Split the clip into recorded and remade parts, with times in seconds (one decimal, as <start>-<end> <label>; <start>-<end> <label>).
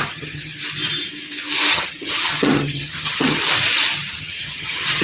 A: 0.0-0.5 remade; 0.5-1.7 recorded; 1.7-3.4 remade; 3.4-4.1 recorded; 4.1-5.0 remade